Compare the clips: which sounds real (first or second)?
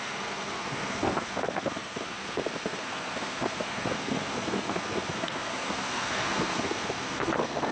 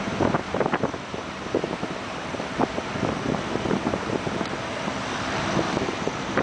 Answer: second